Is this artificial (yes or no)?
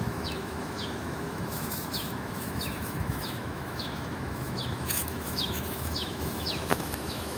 yes